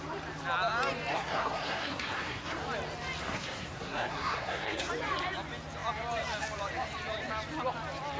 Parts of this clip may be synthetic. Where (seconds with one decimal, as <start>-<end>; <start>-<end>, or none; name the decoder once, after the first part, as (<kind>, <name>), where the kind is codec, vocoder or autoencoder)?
1.1-2.6 (codec, SNAC); 3.2-4.9